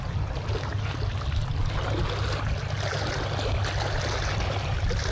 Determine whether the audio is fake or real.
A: real